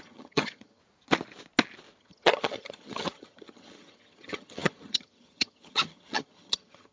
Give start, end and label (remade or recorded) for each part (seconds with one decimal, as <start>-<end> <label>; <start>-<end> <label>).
0.0-0.8 remade; 0.8-2.0 recorded; 2.0-6.9 remade